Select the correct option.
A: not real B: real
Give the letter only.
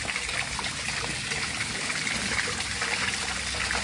B